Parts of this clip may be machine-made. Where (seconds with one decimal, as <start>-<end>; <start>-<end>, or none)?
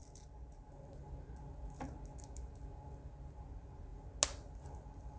none